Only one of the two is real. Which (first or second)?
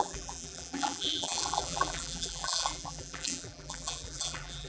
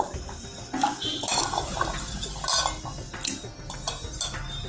second